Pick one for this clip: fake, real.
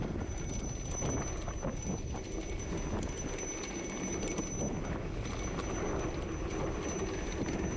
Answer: real